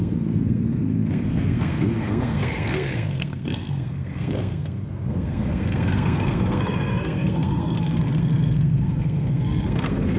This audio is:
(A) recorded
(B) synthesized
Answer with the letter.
B